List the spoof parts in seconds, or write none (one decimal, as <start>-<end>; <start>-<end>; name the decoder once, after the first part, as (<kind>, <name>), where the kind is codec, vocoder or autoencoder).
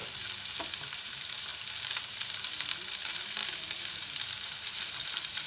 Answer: 0.7-5.5 (vocoder, BigVGAN v2)